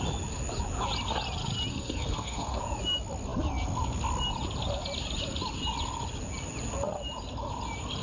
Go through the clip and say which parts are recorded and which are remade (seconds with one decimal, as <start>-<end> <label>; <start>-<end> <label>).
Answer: 0.0-1.7 recorded; 1.7-2.6 remade; 2.6-8.0 recorded